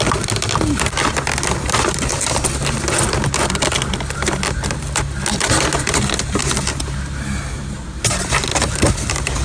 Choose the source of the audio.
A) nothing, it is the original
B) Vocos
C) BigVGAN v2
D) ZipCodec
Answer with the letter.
A